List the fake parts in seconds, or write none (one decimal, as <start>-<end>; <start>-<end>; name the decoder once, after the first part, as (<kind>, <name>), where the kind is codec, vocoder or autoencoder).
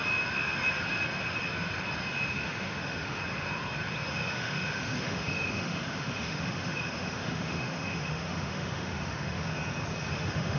2.3-3.2 (autoencoder, DAC-VAE); 4.1-9.5; 10.1-10.6